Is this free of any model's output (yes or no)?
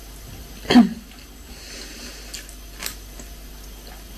yes